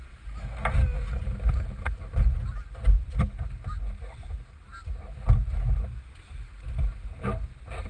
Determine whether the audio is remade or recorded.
recorded